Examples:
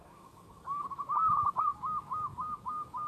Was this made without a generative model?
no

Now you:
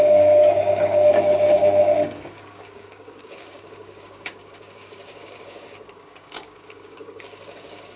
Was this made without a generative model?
no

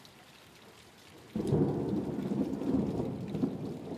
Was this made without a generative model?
yes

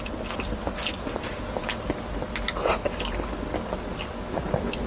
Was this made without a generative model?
yes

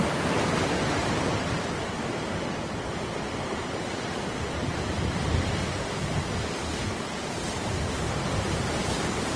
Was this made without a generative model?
yes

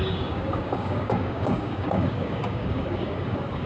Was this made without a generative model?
no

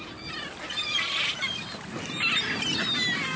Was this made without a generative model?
yes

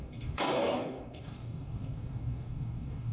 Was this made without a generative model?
no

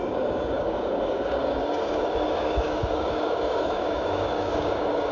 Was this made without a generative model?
no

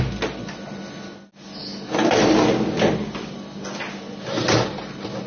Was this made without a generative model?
yes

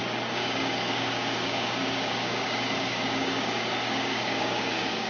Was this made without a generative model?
no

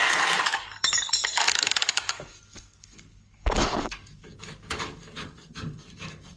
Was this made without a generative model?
no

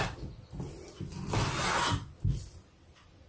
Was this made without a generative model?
yes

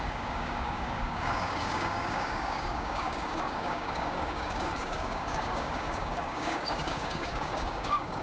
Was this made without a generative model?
no